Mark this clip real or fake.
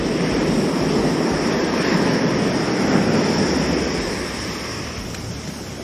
real